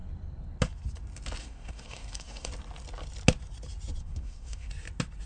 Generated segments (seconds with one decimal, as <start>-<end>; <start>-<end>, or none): 1.4-2.5; 4.0-4.7